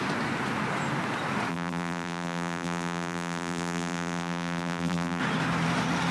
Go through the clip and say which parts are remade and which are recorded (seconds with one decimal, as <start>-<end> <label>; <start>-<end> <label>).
0.0-1.5 recorded; 1.5-5.2 remade; 5.2-6.1 recorded